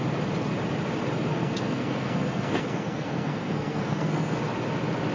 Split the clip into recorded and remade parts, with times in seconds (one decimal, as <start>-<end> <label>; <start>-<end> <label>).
0.0-1.3 recorded; 1.3-4.4 remade; 4.4-5.1 recorded